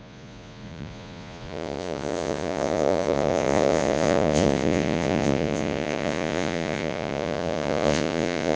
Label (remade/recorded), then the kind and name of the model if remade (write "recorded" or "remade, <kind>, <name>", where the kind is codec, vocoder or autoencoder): remade, vocoder, Vocos